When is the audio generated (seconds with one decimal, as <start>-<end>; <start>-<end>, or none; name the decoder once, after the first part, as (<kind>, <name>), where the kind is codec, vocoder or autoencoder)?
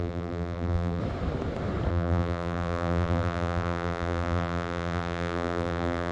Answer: 0.0-1.0 (vocoder, BigVGAN v2); 1.9-6.1